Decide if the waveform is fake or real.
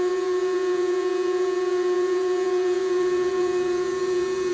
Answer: fake